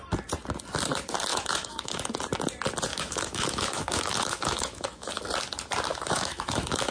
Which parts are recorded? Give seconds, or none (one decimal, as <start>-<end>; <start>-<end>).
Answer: 0.0-1.3; 2.0-2.9; 5.1-5.9